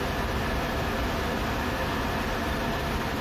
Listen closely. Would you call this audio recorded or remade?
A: remade